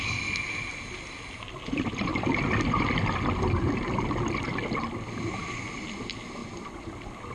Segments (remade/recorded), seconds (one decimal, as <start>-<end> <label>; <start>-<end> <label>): 0.0-7.3 recorded